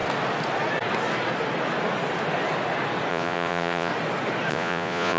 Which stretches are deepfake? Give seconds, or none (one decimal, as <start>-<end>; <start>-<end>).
3.1-3.9; 4.5-5.2